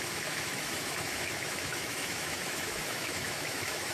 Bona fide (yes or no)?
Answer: no